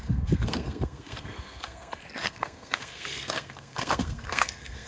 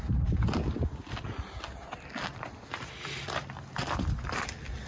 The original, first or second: second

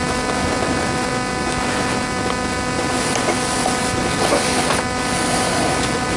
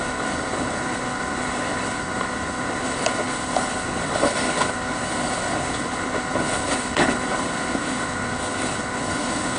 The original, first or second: first